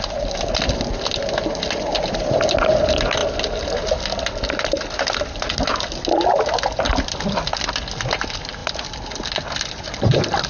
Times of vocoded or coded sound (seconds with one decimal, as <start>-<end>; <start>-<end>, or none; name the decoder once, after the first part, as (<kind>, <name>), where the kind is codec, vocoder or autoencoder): none